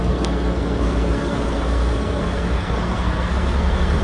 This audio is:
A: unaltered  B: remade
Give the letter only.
B